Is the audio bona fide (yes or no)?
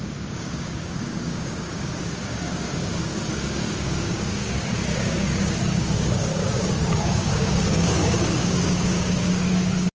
no